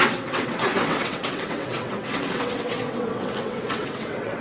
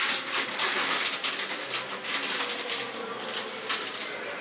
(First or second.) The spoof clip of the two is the first